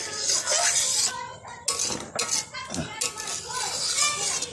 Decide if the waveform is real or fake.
real